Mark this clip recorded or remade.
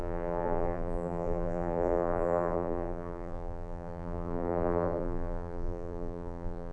remade